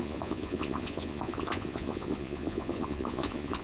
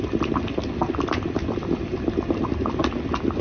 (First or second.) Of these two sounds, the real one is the second